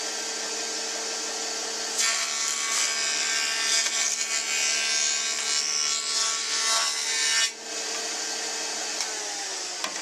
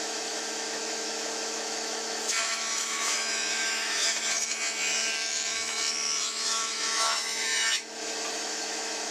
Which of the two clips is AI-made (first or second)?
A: second